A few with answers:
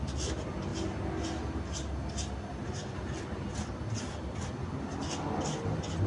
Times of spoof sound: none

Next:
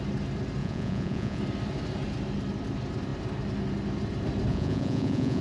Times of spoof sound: 0.6-1.4; 4.5-5.4

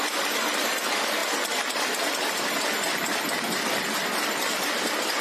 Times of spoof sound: 0.0-5.2